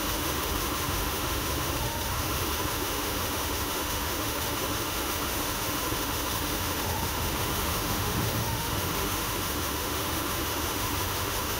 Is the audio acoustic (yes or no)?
no